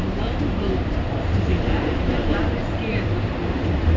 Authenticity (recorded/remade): remade